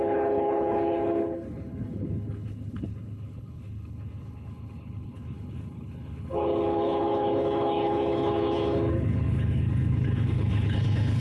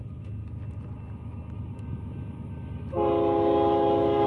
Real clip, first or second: second